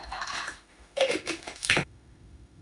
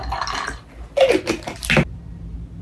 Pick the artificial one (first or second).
first